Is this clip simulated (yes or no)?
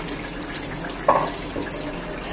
no